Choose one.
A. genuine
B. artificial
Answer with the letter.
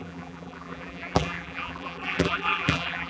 B